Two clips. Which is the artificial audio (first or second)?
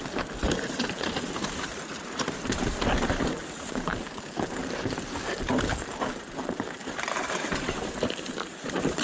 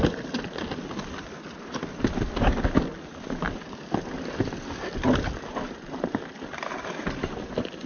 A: first